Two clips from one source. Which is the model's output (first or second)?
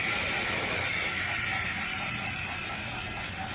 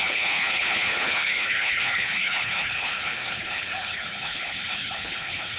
second